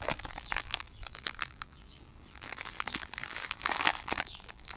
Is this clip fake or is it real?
fake